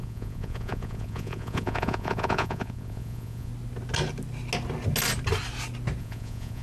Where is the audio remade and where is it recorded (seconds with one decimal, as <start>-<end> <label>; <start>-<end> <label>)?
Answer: 0.0-3.5 remade; 3.5-6.0 recorded; 6.0-6.6 remade